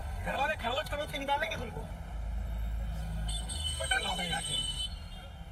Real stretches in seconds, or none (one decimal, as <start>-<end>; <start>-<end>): 1.9-3.0; 4.8-5.5